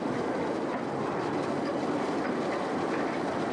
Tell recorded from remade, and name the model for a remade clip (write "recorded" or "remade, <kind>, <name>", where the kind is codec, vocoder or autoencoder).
recorded